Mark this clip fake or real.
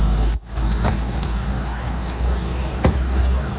fake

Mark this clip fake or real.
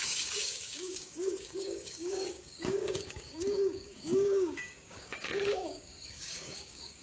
fake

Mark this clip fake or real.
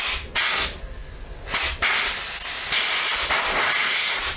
real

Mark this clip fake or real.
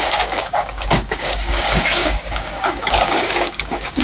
fake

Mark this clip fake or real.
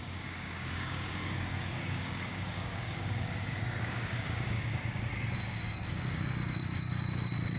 fake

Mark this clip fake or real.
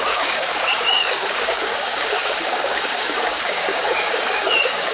fake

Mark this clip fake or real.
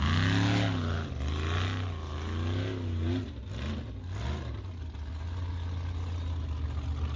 real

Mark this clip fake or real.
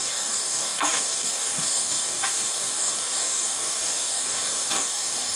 fake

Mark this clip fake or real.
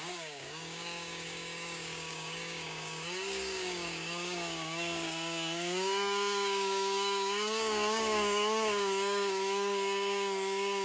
fake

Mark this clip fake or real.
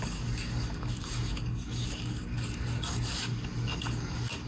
fake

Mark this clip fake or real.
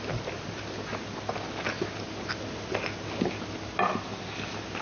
real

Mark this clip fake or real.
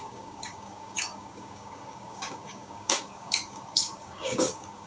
fake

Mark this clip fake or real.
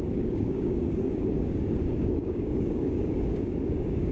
fake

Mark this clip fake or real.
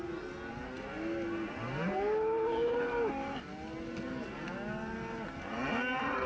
real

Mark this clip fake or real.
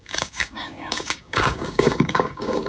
fake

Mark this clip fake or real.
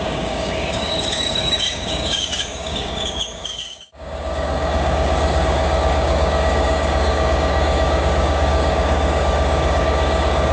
fake